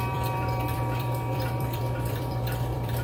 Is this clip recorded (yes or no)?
no